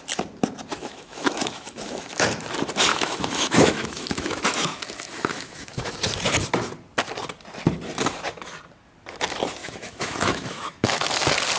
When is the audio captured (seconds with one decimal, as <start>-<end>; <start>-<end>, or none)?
0.0-0.7; 2.3-2.9; 5.9-9.6; 11.0-11.6